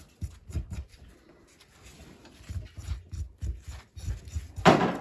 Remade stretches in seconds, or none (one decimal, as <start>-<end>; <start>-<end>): 0.4-1.0